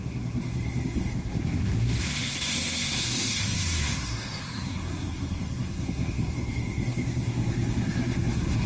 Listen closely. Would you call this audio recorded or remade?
remade